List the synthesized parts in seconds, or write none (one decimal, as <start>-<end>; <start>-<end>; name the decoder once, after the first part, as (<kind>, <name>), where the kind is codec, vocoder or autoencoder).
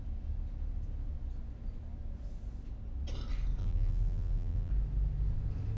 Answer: 3.6-4.7 (vocoder, BigVGAN v2)